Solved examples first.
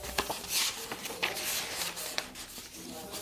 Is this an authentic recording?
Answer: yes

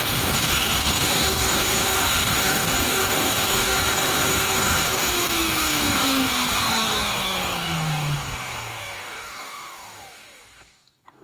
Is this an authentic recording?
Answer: no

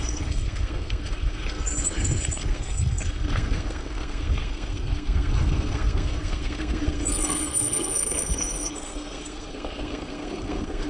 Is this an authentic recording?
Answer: no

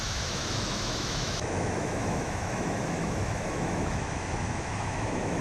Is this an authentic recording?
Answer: no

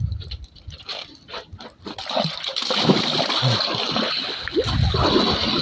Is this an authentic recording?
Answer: yes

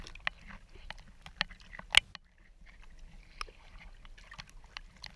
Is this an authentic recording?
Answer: yes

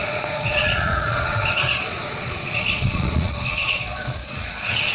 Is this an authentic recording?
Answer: no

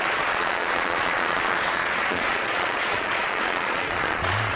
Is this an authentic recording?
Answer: no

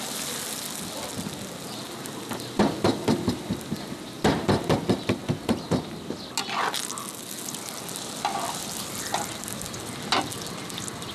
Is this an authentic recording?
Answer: yes